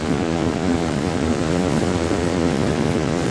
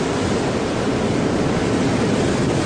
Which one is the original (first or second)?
second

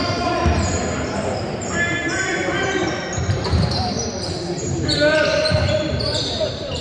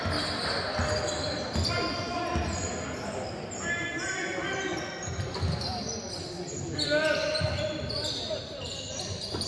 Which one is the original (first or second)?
second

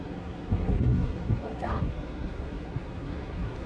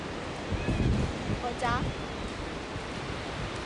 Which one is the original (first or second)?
second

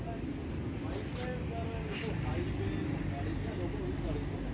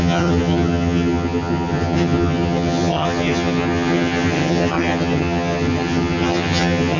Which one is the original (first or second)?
first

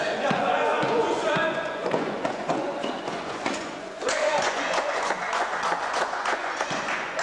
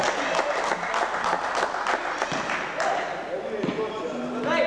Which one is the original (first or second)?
second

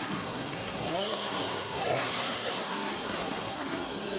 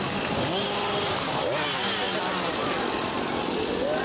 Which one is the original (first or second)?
second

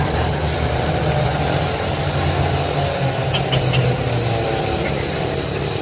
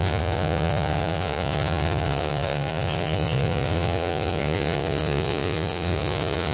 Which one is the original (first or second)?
first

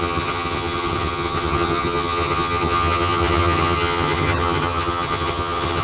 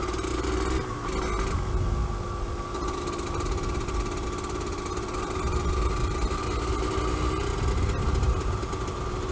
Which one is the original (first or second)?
second